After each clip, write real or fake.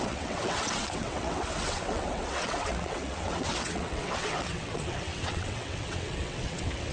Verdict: fake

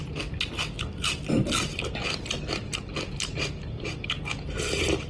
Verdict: real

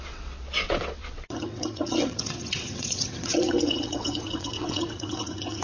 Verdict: fake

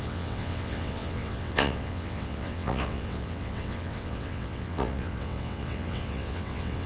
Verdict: fake